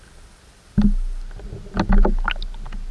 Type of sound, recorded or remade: recorded